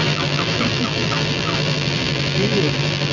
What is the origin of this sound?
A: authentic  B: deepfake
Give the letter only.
B